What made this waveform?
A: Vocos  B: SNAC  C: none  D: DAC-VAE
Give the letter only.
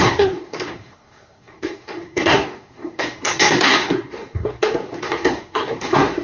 B